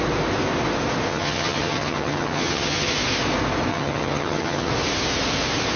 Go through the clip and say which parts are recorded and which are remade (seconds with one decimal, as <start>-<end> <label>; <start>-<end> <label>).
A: 0.0-1.1 recorded; 1.1-2.9 remade; 2.9-3.7 recorded; 3.7-4.7 remade; 4.7-5.8 recorded